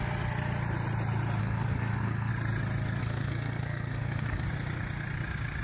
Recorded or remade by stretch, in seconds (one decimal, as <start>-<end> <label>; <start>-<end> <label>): 0.0-1.4 recorded; 1.4-2.3 remade; 2.3-3.0 recorded; 3.0-4.4 remade; 4.4-5.6 recorded